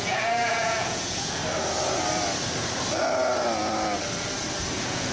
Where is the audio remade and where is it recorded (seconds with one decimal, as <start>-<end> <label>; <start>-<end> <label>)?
0.0-1.4 remade; 1.4-4.5 recorded; 4.5-5.1 remade